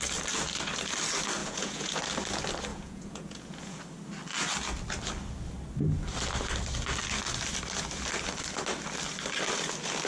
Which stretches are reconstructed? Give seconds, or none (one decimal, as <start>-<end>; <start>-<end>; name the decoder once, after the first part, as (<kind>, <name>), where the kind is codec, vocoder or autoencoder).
1.4-2.0 (vocoder, Vocos); 2.7-3.8